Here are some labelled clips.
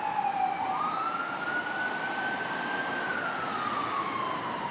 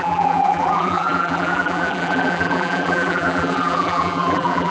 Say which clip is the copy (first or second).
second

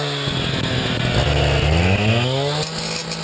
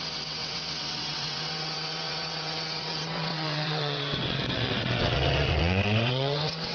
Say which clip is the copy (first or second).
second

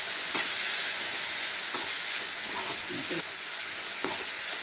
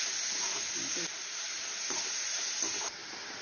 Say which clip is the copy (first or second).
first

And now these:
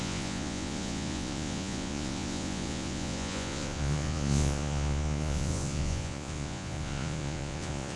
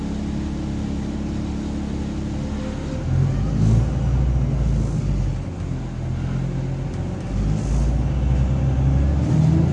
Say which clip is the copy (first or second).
first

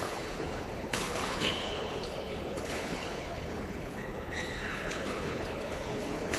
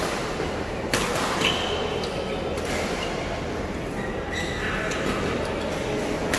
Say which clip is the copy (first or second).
first